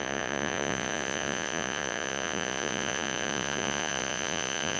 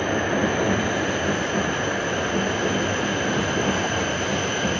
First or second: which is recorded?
second